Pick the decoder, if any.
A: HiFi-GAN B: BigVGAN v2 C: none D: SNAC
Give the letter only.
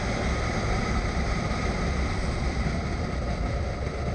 C